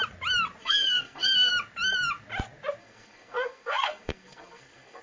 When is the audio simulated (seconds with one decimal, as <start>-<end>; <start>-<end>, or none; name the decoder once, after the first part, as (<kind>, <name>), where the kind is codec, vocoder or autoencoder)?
0.6-1.5 (codec, SNAC); 2.8-5.0

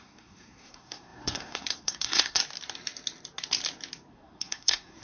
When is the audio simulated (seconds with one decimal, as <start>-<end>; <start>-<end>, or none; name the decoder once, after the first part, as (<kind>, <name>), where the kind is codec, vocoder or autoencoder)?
0.0-2.4 (codec, SNAC); 4.1-5.0

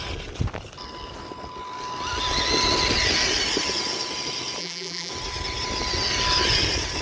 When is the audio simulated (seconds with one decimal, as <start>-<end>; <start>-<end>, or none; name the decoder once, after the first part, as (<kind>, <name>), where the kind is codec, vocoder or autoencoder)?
4.6-5.1 (vocoder, BigVGAN v2)

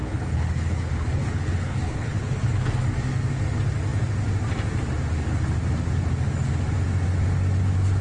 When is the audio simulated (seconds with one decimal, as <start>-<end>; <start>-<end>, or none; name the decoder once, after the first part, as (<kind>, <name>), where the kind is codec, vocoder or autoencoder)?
0.0-2.7 (codec, HILCodec)